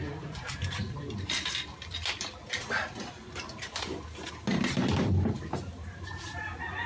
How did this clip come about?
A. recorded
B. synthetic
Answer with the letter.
A